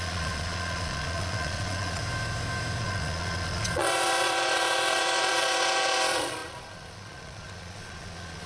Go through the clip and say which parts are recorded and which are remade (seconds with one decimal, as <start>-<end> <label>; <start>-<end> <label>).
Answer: 0.0-2.0 remade; 2.0-2.8 recorded; 2.8-8.5 remade